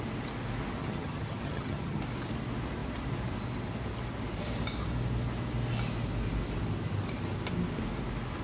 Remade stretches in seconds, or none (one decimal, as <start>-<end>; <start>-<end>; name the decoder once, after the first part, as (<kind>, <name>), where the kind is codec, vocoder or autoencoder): 0.8-2.0 (vocoder, HiFi-GAN)